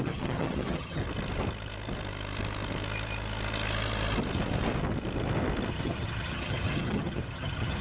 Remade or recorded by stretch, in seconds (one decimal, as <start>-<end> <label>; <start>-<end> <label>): 0.0-1.0 remade; 1.0-5.7 recorded; 5.7-7.8 remade